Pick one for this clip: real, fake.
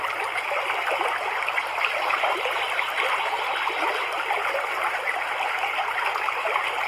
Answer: real